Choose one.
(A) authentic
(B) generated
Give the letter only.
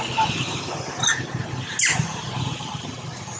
A